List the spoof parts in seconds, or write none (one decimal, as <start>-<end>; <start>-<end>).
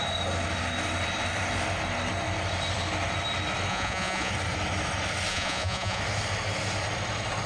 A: 3.7-4.3; 5.3-6.0